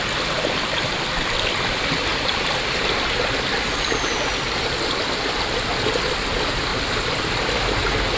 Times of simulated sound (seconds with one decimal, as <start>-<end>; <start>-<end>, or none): 2.1-2.6; 6.7-7.6